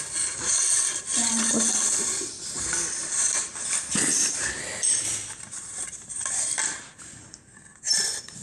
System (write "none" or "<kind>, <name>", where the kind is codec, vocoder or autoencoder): none